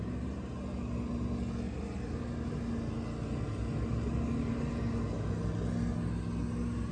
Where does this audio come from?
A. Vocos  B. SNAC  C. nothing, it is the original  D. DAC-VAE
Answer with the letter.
C